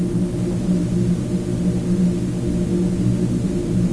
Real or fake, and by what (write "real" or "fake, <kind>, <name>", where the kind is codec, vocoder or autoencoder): real